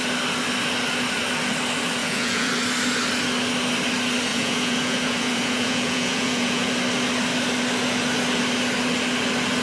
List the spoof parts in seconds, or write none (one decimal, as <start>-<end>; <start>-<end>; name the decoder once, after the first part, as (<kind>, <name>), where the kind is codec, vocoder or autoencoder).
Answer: 2.0-2.5 (vocoder, Vocos); 4.3-6.7